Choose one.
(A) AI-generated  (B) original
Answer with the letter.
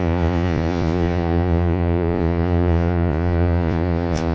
A